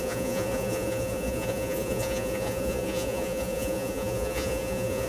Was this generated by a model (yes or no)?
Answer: yes